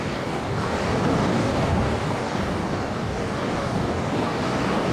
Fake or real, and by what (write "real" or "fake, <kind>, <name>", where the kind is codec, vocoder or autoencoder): fake, codec, DAC